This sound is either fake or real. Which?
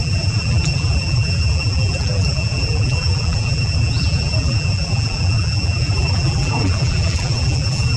fake